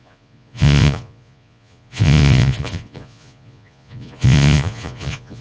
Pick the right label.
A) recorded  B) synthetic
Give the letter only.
B